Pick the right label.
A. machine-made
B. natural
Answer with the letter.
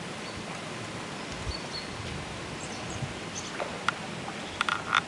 B